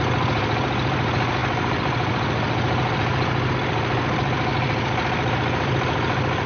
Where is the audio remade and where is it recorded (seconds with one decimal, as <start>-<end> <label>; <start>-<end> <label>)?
0.0-4.5 remade; 4.5-5.4 recorded; 5.4-6.5 remade